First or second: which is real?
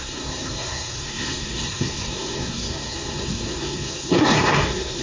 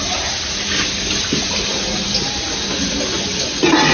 second